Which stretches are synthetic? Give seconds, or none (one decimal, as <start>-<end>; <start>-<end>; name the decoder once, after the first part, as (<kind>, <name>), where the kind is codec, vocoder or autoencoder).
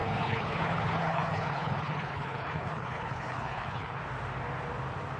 0.0-4.0 (codec, HILCodec)